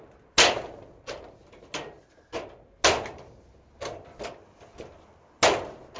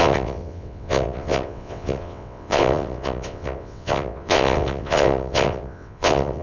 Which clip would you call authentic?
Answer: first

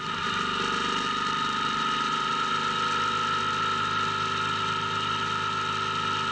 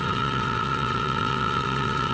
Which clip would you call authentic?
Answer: first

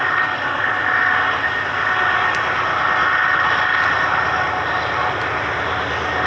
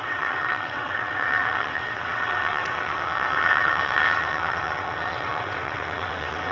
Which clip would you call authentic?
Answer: first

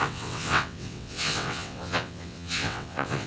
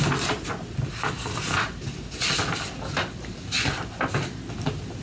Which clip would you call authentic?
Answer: second